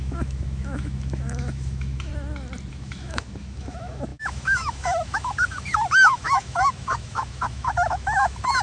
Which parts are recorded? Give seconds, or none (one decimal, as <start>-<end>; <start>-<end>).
2.1-2.7